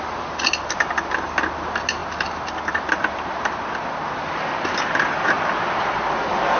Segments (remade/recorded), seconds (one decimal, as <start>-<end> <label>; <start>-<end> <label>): 0.0-6.6 recorded